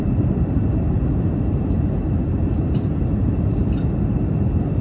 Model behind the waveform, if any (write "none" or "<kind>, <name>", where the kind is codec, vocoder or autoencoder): vocoder, BigVGAN v2